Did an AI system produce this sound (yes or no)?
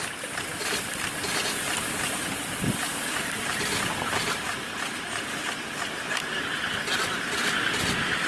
no